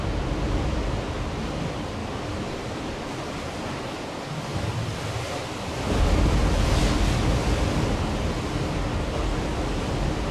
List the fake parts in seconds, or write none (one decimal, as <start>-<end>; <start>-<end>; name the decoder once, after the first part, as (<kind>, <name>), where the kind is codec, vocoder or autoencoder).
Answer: none